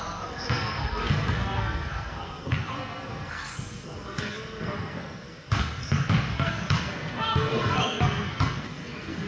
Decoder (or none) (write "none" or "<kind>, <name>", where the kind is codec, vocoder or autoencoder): codec, SNAC